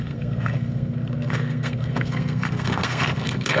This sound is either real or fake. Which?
fake